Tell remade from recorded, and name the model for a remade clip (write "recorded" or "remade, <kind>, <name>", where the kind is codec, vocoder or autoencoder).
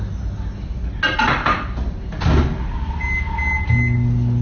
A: recorded